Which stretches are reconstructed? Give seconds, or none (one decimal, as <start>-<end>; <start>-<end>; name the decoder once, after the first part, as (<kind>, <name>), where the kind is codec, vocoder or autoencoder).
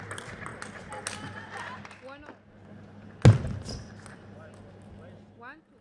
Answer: none